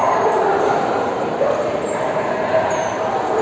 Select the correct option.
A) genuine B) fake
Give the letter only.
A